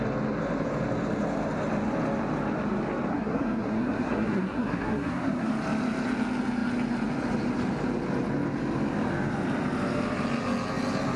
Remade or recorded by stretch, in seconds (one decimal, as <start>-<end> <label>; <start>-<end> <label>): 0.0-3.1 recorded; 3.1-5.5 remade; 5.5-11.2 recorded